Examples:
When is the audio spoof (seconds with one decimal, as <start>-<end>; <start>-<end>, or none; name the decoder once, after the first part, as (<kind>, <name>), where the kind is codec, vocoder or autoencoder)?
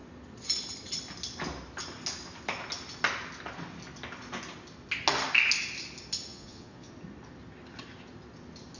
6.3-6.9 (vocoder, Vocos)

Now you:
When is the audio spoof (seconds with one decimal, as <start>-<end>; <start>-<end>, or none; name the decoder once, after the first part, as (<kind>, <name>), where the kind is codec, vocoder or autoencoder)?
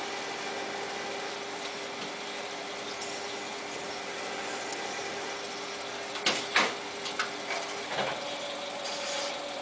none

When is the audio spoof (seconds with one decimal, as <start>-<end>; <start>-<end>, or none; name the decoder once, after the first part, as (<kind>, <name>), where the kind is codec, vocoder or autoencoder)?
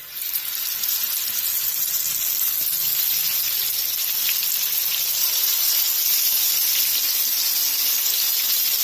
5.2-5.8 (vocoder, BigVGAN v2)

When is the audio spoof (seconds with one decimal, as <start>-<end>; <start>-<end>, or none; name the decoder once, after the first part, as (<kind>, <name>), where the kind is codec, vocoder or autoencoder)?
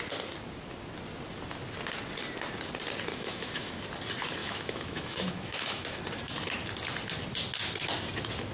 3.1-3.8 (autoencoder, DAC-VAE); 4.4-6.0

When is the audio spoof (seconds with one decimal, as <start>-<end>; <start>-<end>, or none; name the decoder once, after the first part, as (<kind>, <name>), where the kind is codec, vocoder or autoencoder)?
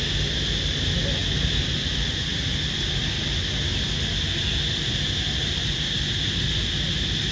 none